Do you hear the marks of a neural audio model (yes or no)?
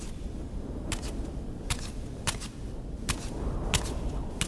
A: no